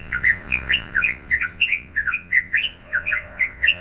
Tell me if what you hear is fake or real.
fake